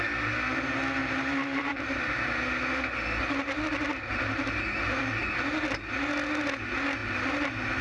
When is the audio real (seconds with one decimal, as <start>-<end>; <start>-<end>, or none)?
0.0-1.0; 2.2-7.0

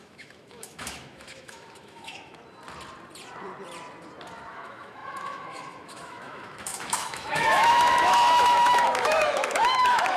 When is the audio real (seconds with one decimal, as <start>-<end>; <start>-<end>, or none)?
2.4-4.5

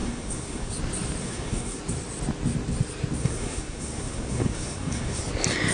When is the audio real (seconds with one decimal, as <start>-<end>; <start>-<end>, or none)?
0.7-1.2; 1.8-3.2; 5.2-5.7

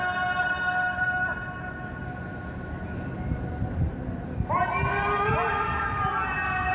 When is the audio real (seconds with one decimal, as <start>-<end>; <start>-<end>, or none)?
0.0-6.7

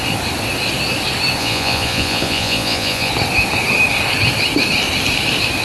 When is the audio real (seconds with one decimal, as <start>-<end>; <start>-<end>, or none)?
0.0-1.4; 3.1-5.6

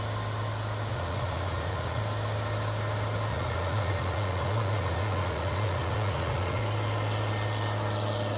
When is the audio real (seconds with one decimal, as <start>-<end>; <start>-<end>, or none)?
0.0-0.9; 2.0-3.3; 6.6-8.4

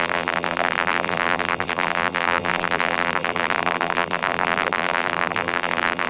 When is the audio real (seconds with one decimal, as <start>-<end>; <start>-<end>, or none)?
none

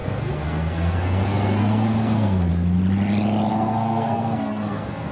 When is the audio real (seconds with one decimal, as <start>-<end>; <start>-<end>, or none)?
2.5-3.5